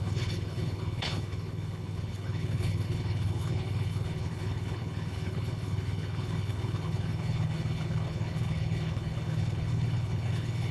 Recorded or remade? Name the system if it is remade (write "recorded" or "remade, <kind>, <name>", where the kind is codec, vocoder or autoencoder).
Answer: remade, codec, HILCodec